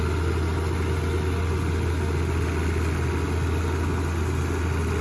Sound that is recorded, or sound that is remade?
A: recorded